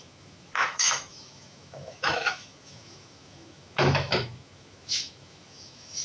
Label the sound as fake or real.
fake